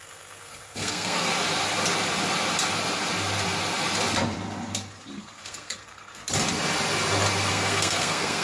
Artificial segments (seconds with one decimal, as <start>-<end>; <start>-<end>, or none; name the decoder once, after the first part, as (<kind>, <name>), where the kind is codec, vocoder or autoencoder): 0.0-1.3 (codec, SNAC); 5.2-6.2; 7.5-8.4